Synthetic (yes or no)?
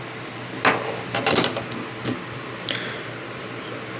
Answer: no